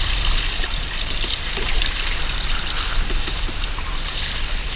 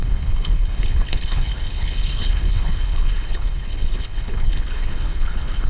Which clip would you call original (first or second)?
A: first